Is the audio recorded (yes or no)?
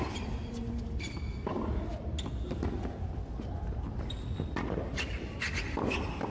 yes